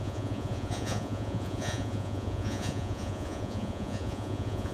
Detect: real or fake fake